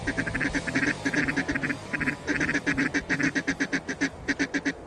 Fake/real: real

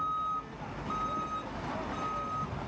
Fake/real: real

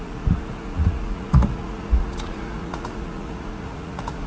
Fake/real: fake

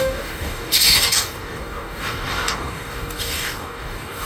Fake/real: fake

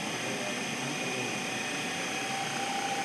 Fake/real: real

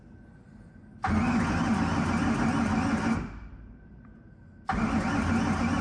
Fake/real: real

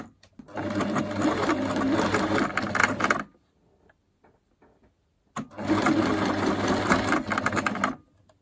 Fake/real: real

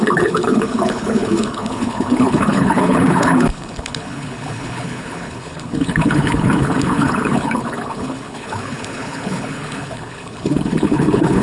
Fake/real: fake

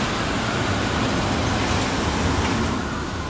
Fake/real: real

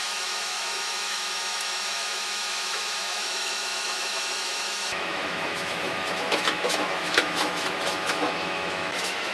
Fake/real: fake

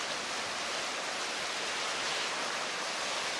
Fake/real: real